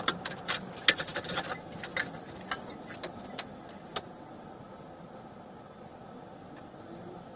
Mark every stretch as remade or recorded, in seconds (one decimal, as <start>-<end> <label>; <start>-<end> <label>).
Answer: 0.0-7.4 recorded